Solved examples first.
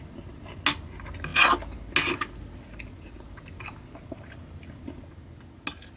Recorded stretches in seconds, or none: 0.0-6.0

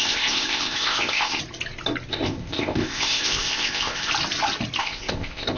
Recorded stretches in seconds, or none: 1.4-2.1; 4.1-4.8

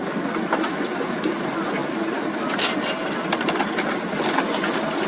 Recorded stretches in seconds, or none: 0.0-5.1

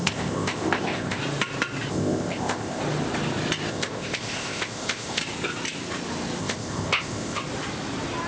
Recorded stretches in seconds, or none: 1.2-1.9; 2.8-3.7; 5.2-6.4; 7.4-8.3

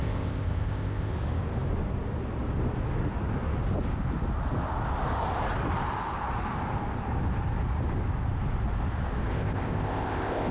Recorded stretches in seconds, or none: 1.1-9.3

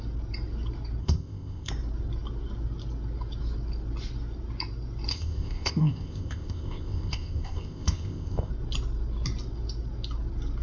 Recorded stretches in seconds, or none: 0.0-1.0; 1.7-5.1; 8.5-10.6

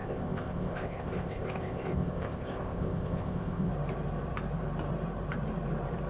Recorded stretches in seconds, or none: 3.7-6.1